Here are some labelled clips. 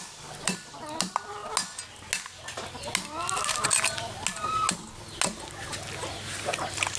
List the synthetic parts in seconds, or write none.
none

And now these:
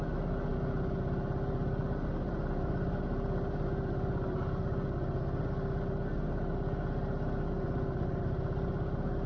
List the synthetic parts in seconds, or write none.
none

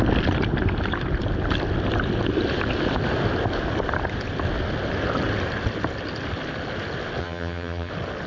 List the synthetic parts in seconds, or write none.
7.2-7.9 (vocoder, HiFi-GAN)

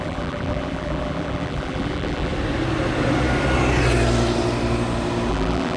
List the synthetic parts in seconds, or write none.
0.0-2.3 (vocoder, BigVGAN v2); 5.3-5.8

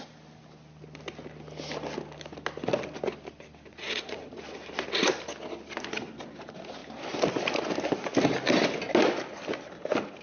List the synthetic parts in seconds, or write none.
3.7-4.4 (vocoder, Vocos)